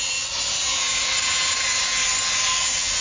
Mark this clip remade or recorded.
recorded